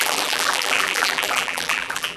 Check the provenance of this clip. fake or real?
fake